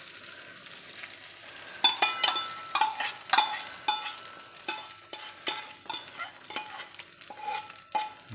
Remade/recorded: recorded